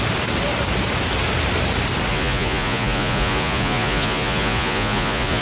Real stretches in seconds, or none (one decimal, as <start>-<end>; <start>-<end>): 0.0-2.1